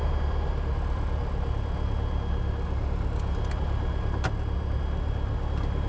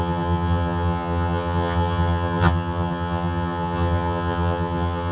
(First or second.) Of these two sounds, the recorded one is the first